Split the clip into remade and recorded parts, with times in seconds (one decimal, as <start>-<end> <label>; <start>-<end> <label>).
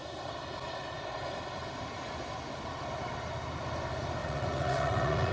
0.0-4.2 recorded; 4.2-5.3 remade